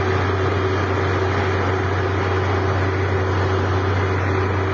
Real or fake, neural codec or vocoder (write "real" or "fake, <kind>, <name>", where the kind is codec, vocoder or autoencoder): real